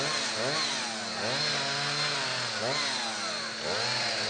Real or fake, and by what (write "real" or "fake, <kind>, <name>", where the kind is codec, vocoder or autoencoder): real